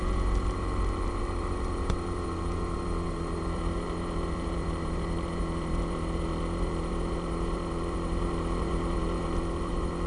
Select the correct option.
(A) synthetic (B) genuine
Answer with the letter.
A